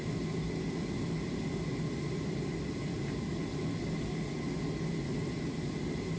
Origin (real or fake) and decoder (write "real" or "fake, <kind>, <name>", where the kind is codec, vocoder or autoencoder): real